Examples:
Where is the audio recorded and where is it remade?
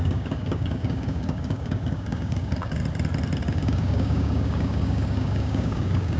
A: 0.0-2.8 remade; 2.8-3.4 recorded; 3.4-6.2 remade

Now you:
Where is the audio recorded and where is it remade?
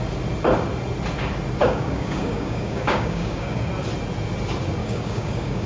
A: 0.0-1.6 recorded; 1.6-3.7 remade; 3.7-4.8 recorded; 4.8-5.7 remade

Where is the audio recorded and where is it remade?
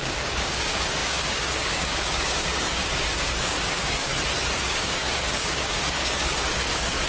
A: 0.0-4.1 remade; 4.1-4.6 recorded; 4.6-7.1 remade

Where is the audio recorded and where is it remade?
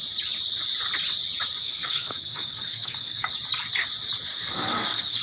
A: 0.0-1.6 recorded; 1.6-3.3 remade; 3.3-4.3 recorded; 4.3-5.2 remade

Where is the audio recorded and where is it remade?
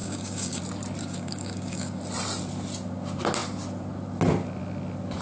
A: 0.0-0.6 remade; 0.6-1.0 recorded; 1.0-2.0 remade; 2.0-5.2 recorded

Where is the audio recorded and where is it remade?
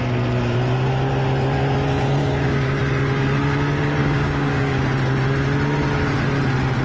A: 0.0-2.2 recorded; 2.2-2.8 remade; 2.8-4.0 recorded; 4.0-4.8 remade; 4.8-6.8 recorded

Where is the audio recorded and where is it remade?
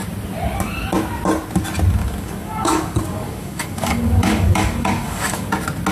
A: 0.0-2.0 recorded; 2.0-5.5 remade; 5.5-5.9 recorded